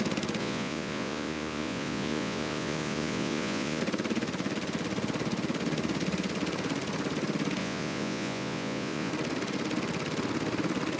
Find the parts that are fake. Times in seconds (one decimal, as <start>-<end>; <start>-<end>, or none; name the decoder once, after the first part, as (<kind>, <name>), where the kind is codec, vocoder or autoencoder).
0.4-3.8 (vocoder, Vocos); 7.6-9.1